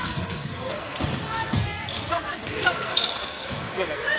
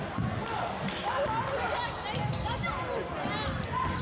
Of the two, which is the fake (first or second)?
first